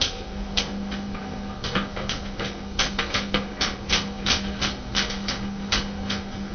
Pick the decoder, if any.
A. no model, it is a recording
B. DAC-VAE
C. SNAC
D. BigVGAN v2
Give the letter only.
C